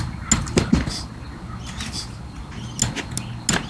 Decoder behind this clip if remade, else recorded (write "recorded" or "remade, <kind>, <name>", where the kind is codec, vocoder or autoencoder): recorded